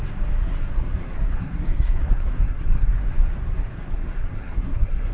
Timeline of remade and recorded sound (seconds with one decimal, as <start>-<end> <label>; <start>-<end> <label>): 0.0-0.4 recorded; 0.4-3.0 remade; 3.0-3.4 recorded; 3.4-5.1 remade